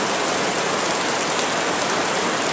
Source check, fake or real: real